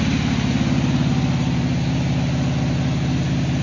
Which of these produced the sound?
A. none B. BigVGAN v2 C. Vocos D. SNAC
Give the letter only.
A